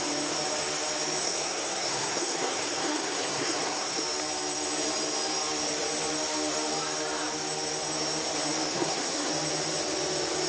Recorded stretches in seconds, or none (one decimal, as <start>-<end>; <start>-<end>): 0.0-1.2; 4.0-8.7; 9.3-10.5